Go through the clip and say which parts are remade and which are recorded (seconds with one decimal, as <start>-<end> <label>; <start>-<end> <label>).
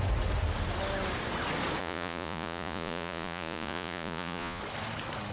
0.0-1.8 recorded; 1.8-4.6 remade; 4.6-5.3 recorded